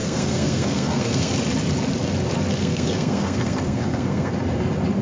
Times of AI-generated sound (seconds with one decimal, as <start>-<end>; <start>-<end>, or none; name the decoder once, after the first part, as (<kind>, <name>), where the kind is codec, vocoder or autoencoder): 0.0-1.3 (codec, SNAC); 2.6-4.3